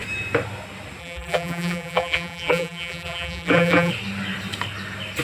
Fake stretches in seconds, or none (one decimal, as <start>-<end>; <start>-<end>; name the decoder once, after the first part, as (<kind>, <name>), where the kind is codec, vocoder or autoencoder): 1.0-3.9 (vocoder, BigVGAN v2)